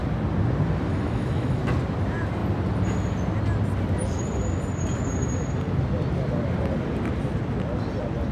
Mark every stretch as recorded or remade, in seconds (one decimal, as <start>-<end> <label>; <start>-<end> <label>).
0.0-0.9 recorded; 0.9-1.6 remade; 1.6-8.3 recorded